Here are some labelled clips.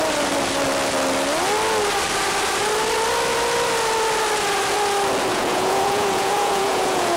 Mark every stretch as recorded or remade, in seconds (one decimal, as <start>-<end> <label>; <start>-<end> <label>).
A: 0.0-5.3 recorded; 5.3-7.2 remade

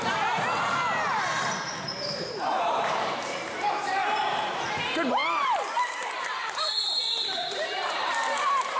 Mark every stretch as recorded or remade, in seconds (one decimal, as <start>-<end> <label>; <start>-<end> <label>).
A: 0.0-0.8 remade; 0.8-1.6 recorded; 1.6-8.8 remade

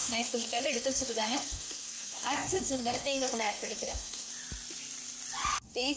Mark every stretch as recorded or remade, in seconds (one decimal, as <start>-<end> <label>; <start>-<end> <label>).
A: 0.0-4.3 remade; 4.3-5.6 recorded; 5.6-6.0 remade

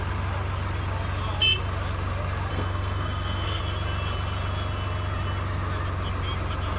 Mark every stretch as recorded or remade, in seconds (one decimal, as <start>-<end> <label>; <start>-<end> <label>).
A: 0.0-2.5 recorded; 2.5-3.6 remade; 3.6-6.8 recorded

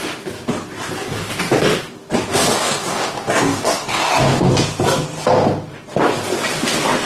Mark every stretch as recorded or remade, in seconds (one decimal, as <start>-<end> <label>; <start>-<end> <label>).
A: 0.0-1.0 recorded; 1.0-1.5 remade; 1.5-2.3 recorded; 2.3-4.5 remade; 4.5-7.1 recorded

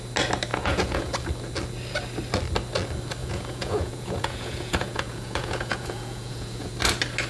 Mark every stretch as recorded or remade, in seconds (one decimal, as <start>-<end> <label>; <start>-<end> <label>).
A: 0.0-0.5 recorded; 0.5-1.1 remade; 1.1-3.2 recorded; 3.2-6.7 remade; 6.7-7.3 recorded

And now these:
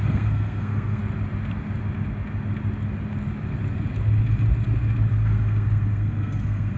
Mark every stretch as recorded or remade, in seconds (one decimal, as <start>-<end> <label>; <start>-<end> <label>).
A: 0.0-1.0 remade; 1.0-5.1 recorded; 5.1-6.8 remade